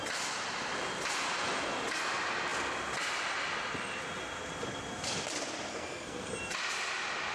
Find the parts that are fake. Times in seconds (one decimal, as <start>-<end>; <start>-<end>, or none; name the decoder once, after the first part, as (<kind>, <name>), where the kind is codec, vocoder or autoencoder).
5.7-6.3 (codec, SNAC)